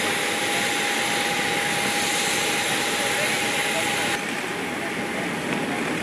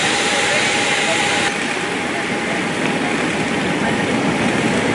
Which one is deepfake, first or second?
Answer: second